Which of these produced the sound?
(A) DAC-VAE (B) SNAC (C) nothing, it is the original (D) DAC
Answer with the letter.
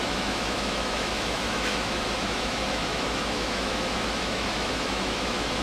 A